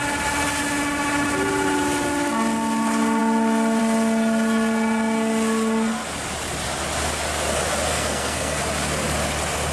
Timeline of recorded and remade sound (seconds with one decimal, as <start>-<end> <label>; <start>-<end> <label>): 0.0-7.9 recorded; 7.9-8.6 remade; 8.6-9.7 recorded